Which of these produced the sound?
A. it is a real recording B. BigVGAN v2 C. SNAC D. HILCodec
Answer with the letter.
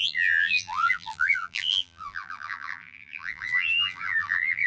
B